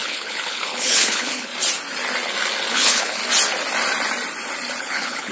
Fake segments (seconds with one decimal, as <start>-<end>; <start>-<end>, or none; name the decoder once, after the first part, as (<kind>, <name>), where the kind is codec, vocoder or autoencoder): 0.0-1.5 (codec, HILCodec); 2.7-3.2; 4.8-5.3